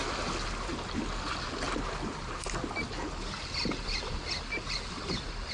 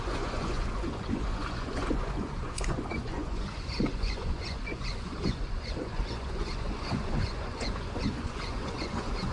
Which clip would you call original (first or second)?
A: first